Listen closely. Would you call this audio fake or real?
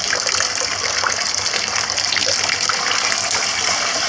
real